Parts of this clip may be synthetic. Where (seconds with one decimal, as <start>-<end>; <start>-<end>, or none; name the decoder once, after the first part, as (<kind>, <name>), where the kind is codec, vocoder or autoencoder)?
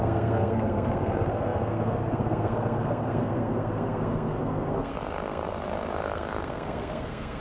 0.0-7.4 (codec, SNAC)